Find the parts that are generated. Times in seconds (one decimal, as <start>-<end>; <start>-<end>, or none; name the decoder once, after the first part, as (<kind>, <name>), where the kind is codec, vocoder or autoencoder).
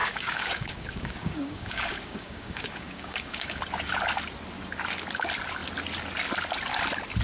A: 0.0-3.6 (codec, DAC)